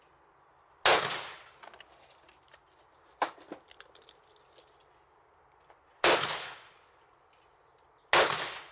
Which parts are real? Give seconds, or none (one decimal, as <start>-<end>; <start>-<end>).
0.0-8.7